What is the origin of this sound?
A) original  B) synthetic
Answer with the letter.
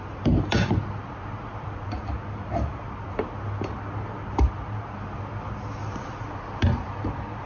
A